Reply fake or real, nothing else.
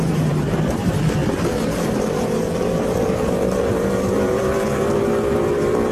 fake